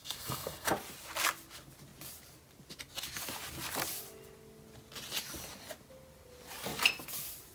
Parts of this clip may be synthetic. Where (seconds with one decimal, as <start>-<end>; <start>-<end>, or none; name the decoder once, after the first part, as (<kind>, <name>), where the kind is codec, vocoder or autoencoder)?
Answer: 0.0-0.7 (codec, SNAC)